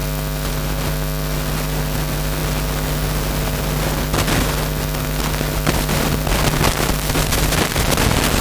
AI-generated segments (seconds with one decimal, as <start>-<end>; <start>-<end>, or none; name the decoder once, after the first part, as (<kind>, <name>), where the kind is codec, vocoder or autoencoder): none